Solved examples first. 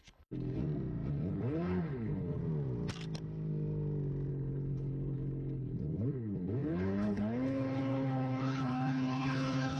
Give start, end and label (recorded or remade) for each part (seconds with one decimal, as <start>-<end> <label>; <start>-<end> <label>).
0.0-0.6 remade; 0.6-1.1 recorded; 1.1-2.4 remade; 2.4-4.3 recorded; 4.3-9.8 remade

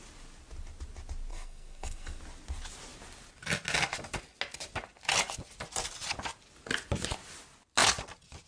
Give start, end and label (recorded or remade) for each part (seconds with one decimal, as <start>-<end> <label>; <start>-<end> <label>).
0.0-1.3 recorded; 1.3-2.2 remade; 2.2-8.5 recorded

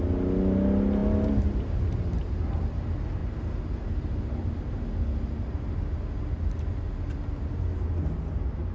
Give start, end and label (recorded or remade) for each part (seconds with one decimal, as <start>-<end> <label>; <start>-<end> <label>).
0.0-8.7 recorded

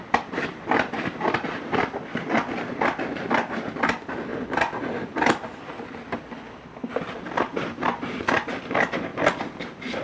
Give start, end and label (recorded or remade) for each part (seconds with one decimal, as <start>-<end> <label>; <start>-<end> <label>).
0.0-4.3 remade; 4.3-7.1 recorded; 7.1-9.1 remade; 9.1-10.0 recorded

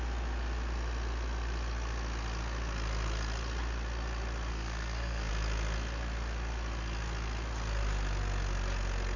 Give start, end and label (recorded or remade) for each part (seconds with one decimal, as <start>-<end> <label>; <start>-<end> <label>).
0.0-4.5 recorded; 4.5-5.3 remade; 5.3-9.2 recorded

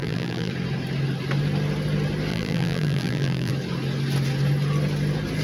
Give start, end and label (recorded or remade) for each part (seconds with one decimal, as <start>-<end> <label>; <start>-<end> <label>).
0.0-0.5 remade; 0.5-2.3 recorded; 2.3-3.5 remade; 3.5-5.4 recorded